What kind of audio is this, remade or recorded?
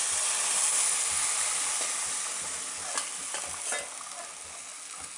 recorded